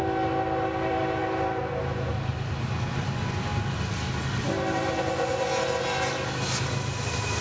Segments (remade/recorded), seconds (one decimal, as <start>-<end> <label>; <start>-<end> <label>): 0.0-7.4 recorded